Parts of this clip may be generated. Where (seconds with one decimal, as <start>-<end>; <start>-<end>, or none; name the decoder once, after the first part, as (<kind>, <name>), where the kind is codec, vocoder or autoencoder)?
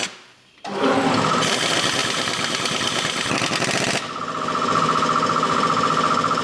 2.0-4.2 (vocoder, BigVGAN v2)